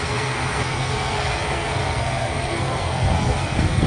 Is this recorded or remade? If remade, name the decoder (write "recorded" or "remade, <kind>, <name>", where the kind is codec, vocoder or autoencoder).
remade, codec, SNAC